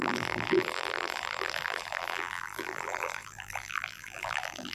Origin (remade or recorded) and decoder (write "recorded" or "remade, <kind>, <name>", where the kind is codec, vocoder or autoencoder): remade, vocoder, BigVGAN v2